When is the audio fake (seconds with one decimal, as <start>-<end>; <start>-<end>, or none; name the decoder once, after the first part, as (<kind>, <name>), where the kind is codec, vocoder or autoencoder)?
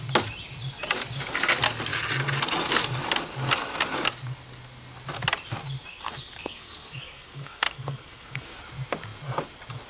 5.9-8.6 (codec, SNAC)